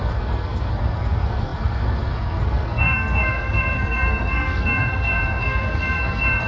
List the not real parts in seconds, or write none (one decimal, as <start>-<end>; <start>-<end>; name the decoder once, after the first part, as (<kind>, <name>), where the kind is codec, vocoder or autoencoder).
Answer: 0.0-6.5 (codec, SNAC)

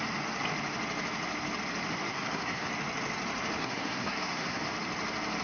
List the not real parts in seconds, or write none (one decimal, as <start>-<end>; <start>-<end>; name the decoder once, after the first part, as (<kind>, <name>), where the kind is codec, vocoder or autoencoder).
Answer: 2.1-2.7 (codec, SNAC); 3.6-4.6

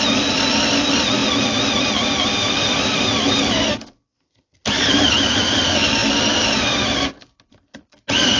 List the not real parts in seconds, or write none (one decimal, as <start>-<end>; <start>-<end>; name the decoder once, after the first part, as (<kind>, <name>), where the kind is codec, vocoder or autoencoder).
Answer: none

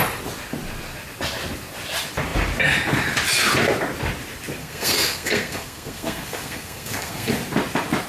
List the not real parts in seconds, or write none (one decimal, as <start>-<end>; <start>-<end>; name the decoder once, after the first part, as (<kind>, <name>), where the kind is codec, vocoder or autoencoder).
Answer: 4.6-7.3 (codec, SNAC)

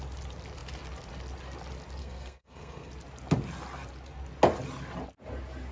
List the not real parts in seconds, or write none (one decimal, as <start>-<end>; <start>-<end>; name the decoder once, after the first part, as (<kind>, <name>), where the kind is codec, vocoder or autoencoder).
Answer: 2.0-2.9 (codec, SNAC)

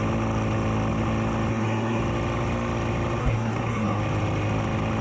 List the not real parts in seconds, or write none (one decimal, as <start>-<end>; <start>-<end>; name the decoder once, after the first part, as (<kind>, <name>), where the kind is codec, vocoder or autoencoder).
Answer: 1.5-2.0 (codec, SNAC); 3.2-4.0